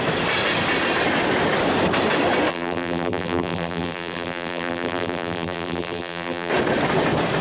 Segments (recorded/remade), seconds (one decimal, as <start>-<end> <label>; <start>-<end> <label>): 0.0-2.5 recorded; 2.5-6.5 remade; 6.5-7.4 recorded